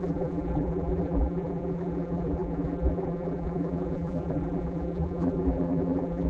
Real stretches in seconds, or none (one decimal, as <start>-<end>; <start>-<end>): none

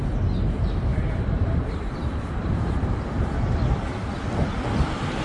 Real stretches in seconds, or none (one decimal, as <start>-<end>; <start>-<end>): 0.0-0.9; 4.0-5.2

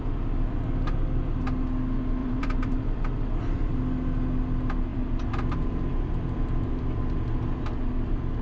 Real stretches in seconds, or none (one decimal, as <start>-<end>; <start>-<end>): 0.0-2.2; 3.7-4.9; 6.5-8.4

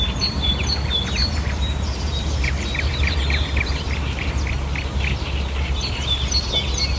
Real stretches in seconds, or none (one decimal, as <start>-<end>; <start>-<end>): 0.0-1.2; 4.3-7.0

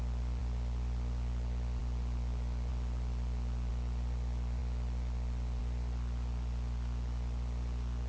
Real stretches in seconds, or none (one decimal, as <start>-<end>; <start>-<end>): 0.0-8.1

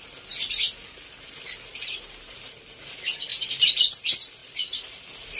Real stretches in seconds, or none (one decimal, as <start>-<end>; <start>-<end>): 0.0-1.7; 2.6-3.3; 3.9-4.4; 5.0-5.4